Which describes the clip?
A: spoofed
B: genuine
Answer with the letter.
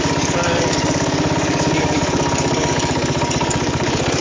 A